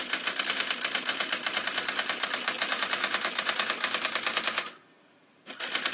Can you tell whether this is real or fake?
real